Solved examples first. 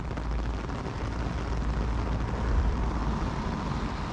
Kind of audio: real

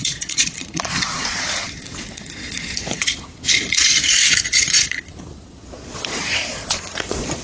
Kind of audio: fake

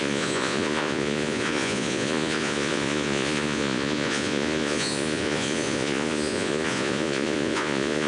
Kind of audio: fake